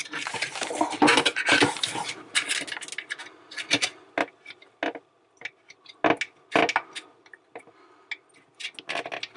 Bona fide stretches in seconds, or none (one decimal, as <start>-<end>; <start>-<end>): 0.7-1.1; 2.1-9.4